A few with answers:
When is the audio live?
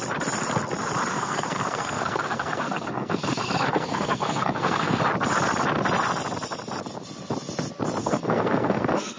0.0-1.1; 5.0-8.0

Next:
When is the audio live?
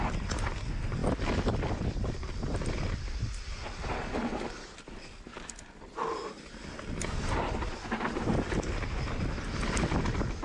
0.0-10.4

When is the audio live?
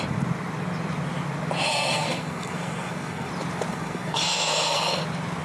0.0-1.7; 3.3-3.7; 5.0-5.4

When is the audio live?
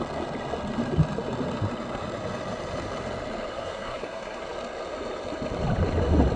0.0-3.5; 4.4-6.4